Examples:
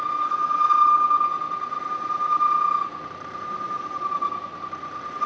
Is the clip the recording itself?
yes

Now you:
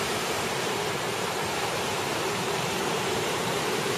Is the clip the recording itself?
no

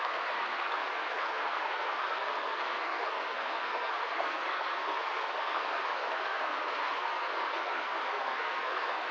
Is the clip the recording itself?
no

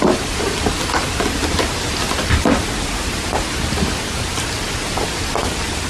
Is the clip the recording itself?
yes